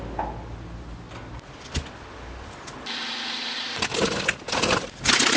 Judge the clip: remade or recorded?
recorded